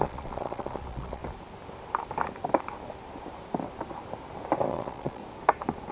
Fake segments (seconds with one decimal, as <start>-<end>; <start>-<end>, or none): 0.0-1.2; 4.7-5.2